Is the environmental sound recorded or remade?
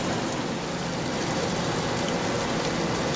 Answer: recorded